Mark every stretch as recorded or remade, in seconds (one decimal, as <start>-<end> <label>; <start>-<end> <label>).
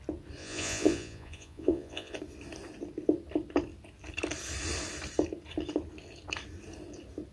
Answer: 0.0-0.4 recorded; 0.4-2.2 remade; 2.2-7.3 recorded